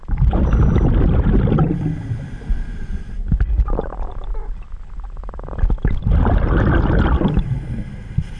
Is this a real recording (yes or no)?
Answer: yes